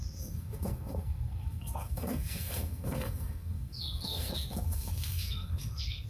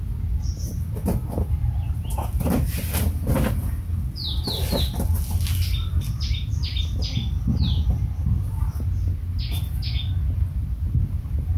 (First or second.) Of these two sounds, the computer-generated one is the first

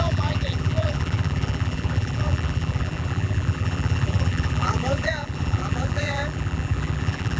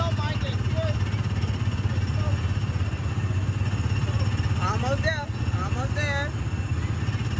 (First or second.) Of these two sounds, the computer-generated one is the first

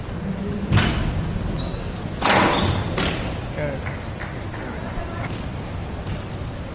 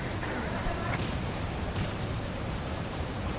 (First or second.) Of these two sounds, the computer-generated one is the second